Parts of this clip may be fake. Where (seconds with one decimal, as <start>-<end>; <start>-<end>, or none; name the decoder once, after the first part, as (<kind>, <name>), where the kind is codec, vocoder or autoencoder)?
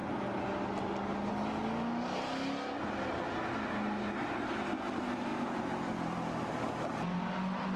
5.3-6.5 (vocoder, BigVGAN v2)